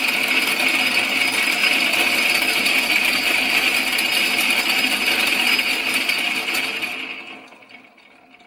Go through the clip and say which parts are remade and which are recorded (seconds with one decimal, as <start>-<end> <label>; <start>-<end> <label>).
0.0-8.5 recorded